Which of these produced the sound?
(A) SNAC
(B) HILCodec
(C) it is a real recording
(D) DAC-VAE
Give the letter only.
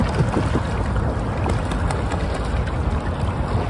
C